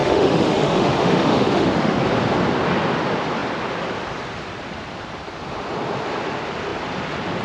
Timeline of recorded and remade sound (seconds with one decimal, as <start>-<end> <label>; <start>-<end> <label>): 0.0-2.0 remade; 2.0-7.4 recorded